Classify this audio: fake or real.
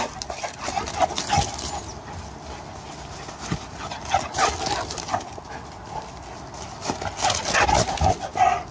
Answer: real